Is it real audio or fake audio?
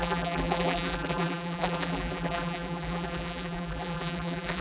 fake